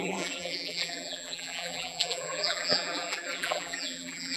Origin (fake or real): fake